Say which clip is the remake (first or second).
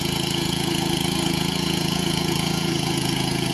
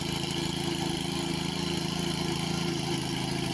first